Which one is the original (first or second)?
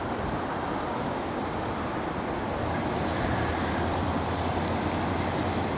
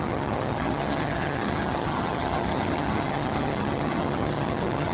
first